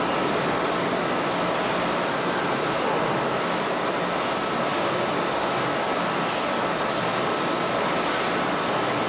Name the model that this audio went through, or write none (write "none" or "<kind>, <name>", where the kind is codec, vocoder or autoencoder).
none